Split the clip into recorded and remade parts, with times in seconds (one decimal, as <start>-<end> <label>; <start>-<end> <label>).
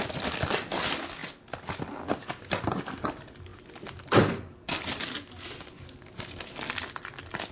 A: 0.0-7.5 recorded